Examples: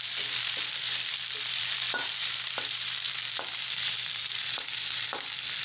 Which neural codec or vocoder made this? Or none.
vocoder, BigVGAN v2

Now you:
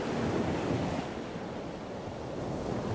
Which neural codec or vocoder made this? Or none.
none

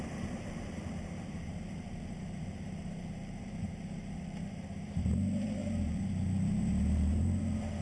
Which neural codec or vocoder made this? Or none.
vocoder, BigVGAN v2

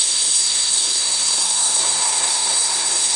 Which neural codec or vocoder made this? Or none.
codec, SNAC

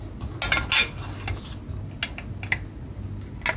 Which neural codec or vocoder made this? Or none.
none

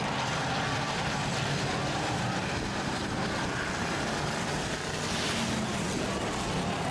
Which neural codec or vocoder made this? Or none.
none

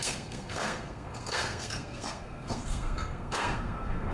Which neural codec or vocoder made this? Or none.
codec, SNAC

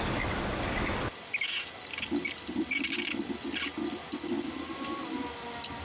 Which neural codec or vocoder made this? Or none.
none